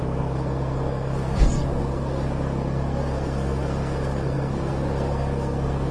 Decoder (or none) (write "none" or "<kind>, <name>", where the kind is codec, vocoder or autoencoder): codec, SNAC